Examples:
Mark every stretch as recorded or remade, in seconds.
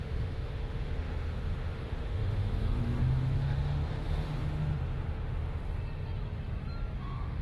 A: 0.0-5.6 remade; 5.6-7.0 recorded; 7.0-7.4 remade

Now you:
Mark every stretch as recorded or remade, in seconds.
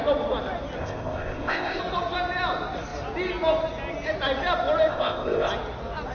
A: 0.0-0.8 recorded; 0.8-1.8 remade; 1.8-4.9 recorded; 4.9-5.5 remade; 5.5-6.1 recorded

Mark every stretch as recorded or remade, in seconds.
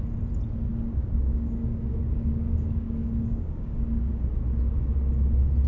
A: 0.0-0.7 recorded; 0.7-4.1 remade; 4.1-5.7 recorded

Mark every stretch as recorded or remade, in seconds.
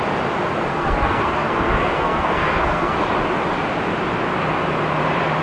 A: 0.0-0.7 recorded; 0.7-3.0 remade; 3.0-5.4 recorded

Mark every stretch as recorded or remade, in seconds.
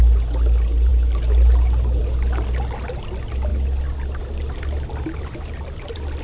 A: 0.0-6.2 recorded